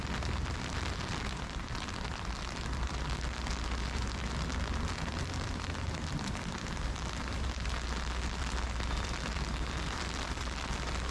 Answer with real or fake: fake